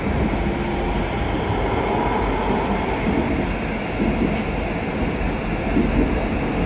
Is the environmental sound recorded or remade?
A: recorded